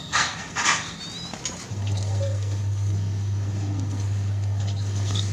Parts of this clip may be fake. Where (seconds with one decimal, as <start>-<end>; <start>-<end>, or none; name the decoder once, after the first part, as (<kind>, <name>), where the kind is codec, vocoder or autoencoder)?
0.0-1.0 (codec, SNAC); 1.7-5.3